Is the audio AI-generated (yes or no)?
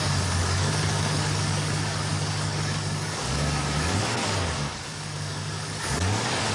yes